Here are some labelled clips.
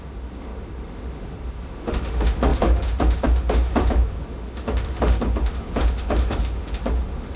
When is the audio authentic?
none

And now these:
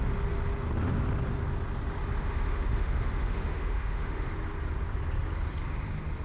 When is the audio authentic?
0.0-2.2; 4.3-6.2

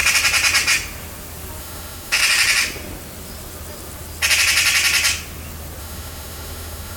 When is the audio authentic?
0.0-1.6; 2.2-5.8

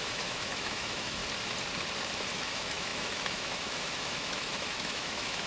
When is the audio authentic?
1.2-2.3

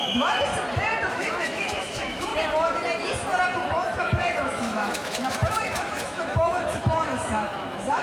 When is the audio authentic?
0.5-1.1; 2.3-3.7

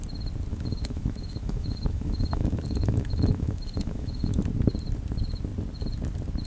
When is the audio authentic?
0.0-0.5; 4.4-6.5